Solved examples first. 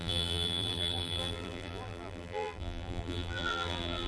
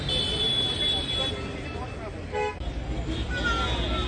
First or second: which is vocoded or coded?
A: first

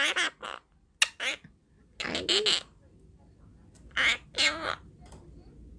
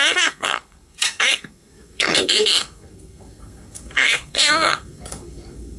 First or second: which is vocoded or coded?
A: second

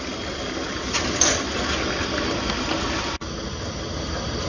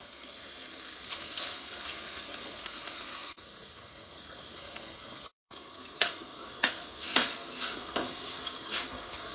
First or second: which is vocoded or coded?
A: second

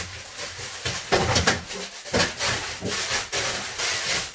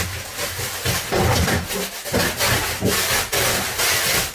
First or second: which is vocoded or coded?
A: first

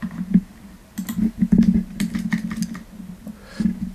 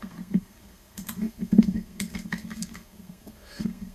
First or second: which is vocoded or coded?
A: second